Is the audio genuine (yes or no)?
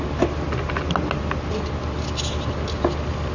yes